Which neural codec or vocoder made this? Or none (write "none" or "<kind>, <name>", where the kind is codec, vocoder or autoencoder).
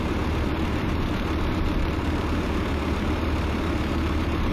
vocoder, BigVGAN v2